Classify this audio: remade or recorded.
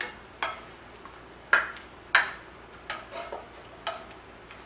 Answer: recorded